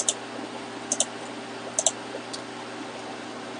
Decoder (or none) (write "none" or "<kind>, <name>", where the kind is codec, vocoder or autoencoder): none